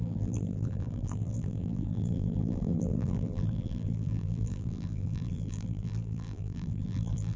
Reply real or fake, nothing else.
fake